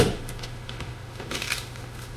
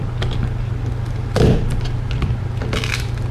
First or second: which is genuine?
second